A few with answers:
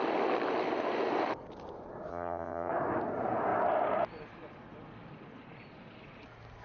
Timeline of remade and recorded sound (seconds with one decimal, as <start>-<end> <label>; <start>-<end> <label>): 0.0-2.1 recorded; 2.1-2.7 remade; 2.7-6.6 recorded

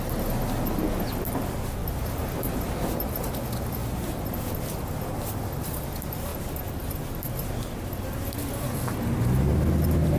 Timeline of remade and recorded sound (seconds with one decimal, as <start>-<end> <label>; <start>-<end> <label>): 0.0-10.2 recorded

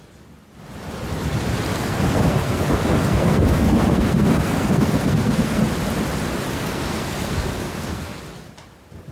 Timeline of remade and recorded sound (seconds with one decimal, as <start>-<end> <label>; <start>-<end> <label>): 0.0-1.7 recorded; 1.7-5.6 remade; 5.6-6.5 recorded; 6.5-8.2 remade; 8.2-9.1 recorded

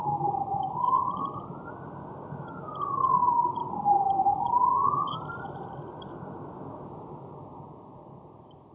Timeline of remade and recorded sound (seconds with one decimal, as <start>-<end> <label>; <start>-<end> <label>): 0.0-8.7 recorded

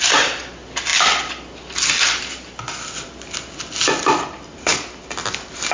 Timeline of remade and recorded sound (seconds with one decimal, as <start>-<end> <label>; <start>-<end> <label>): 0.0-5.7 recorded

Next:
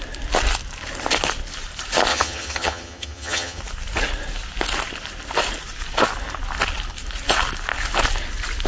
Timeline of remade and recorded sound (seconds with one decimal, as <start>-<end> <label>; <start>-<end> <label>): 0.0-2.1 recorded; 2.1-3.6 remade; 3.6-8.7 recorded

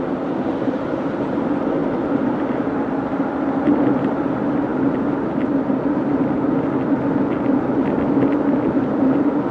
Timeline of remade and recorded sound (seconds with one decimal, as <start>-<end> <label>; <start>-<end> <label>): 0.0-1.8 remade; 1.8-2.4 recorded; 2.4-4.7 remade; 4.7-8.0 recorded; 8.0-9.5 remade

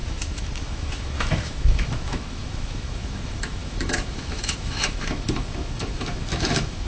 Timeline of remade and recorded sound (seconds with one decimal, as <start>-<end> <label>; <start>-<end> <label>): 0.0-6.9 remade